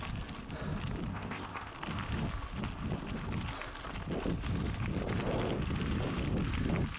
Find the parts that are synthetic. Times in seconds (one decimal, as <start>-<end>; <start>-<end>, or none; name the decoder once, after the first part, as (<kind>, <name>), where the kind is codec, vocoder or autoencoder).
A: 1.1-1.7 (codec, ZipCodec)